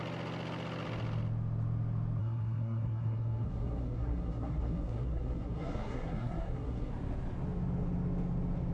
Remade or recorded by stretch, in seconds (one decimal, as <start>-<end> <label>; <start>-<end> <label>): 0.0-2.2 recorded; 2.2-6.9 remade; 6.9-8.7 recorded